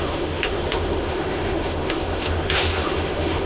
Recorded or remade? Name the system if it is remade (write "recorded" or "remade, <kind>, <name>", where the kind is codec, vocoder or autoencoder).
remade, autoencoder, DAC-VAE